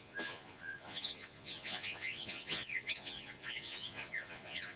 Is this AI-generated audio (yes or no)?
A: yes